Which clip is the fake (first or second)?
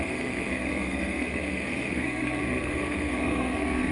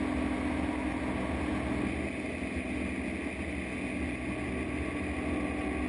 first